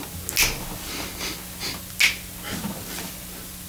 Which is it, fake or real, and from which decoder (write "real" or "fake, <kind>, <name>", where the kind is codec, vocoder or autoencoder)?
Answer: real